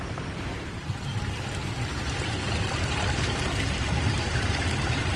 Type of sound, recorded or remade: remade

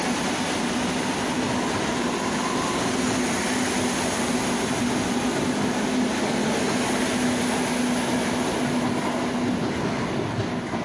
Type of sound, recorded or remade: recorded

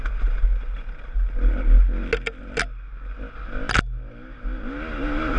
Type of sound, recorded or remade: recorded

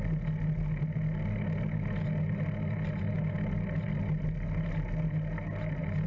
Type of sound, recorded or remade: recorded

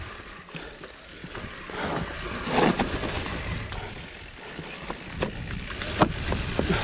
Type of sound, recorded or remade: recorded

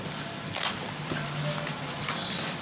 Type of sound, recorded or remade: remade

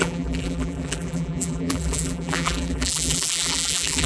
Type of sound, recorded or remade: remade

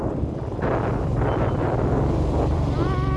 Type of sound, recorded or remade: remade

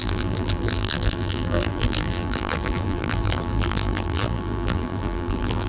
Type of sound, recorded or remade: remade